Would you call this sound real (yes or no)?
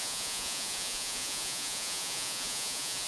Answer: no